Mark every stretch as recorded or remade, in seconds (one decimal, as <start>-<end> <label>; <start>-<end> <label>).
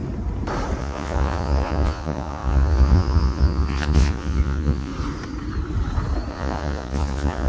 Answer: 0.0-0.8 recorded; 0.8-4.9 remade; 4.9-6.3 recorded; 6.3-7.5 remade